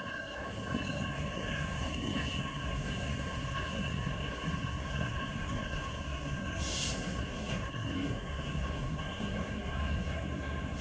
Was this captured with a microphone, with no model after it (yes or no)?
no